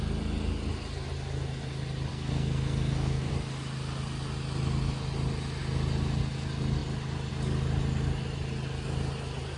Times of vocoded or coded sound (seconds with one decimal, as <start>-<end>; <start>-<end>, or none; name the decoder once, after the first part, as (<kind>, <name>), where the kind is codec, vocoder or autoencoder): 2.1-3.3 (codec, SNAC)